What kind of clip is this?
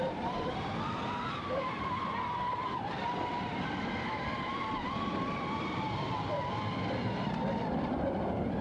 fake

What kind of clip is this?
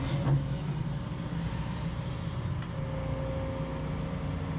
real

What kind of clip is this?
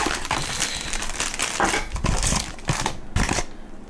real